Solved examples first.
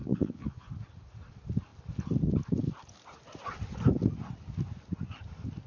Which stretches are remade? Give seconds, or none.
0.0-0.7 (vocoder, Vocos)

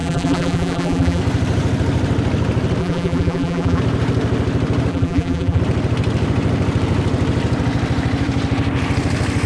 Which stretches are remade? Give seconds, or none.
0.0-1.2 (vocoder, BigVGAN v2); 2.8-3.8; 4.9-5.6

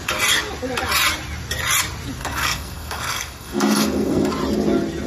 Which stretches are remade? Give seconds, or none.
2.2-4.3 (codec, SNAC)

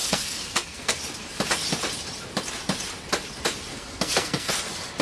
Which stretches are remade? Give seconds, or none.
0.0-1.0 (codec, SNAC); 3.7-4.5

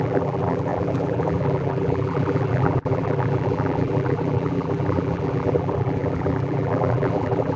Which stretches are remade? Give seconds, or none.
0.0-7.6 (vocoder, BigVGAN v2)